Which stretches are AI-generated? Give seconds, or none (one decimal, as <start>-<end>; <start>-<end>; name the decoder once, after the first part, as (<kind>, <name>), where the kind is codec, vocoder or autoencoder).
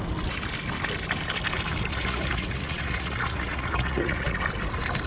1.9-4.4 (vocoder, Vocos)